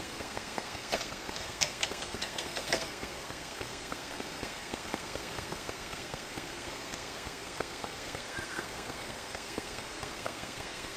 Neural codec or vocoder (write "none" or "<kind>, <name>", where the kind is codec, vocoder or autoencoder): codec, SNAC